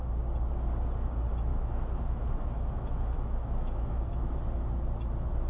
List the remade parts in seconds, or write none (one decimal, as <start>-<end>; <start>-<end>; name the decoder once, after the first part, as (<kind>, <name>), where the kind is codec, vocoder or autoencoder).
1.5-4.3 (autoencoder, DAC-VAE)